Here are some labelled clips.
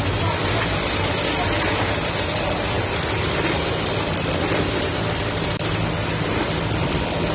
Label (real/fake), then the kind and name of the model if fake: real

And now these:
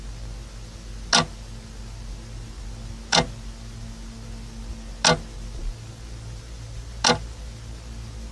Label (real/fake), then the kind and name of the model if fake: real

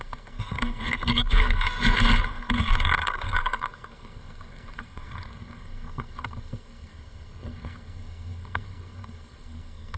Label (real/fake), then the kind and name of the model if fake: fake, codec, SNAC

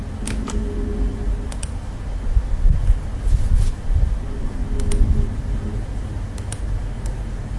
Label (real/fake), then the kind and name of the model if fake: real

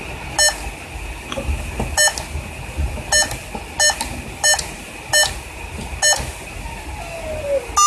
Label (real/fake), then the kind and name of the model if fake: real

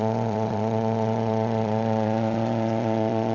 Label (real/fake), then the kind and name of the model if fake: fake, vocoder, Vocos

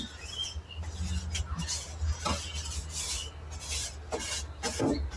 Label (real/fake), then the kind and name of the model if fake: real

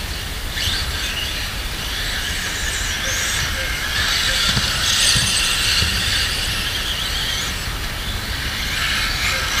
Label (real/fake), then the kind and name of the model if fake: real